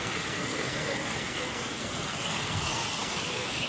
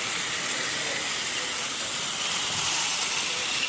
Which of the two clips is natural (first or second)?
second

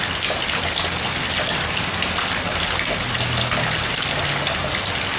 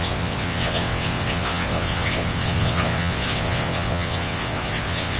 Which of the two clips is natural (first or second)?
first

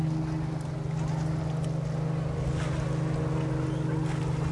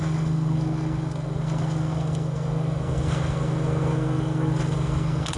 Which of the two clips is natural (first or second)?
first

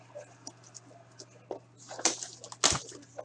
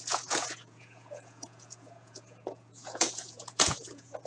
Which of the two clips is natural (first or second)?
first